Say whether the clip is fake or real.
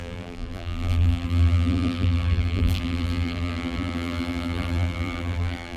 fake